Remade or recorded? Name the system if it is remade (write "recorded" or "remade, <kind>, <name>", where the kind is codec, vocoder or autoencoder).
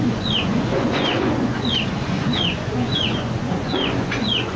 remade, vocoder, Vocos